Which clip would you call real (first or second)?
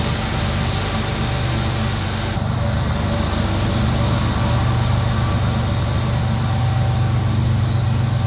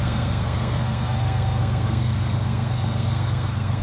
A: first